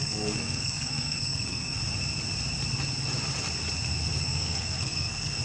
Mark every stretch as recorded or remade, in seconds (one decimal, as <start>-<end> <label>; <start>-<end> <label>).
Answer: 0.0-1.8 remade; 1.8-4.2 recorded; 4.2-5.4 remade